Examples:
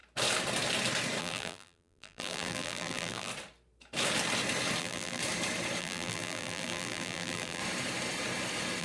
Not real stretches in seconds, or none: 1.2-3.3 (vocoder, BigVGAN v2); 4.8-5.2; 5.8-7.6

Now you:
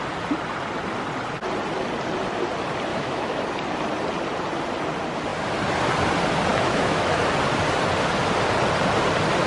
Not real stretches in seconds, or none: 2.9-3.4 (autoencoder, DAC-VAE); 6.5-7.2

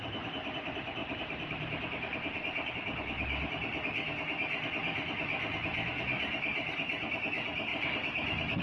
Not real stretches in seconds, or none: 1.0-2.7 (vocoder, BigVGAN v2); 6.5-7.3

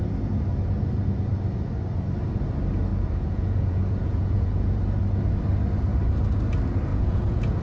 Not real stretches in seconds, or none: 2.9-4.8 (vocoder, Vocos); 6.9-7.6